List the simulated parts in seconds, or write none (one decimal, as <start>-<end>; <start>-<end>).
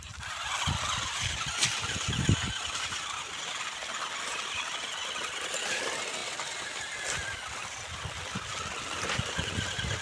none